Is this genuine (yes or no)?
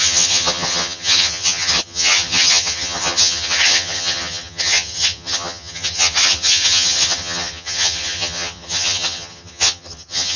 no